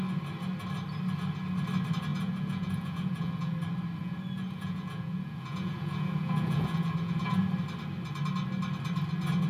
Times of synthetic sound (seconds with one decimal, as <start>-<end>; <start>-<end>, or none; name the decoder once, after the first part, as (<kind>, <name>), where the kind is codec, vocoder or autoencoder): 2.1-3.5 (vocoder, Vocos); 4.0-7.5